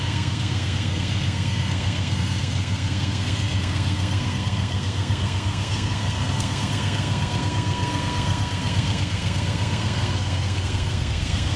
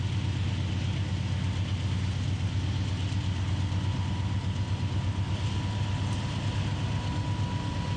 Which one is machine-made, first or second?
first